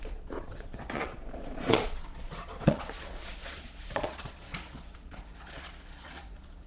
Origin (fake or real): fake